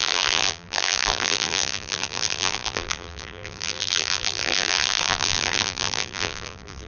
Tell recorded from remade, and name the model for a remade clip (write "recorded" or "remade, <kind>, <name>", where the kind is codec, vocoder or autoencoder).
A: remade, vocoder, BigVGAN v2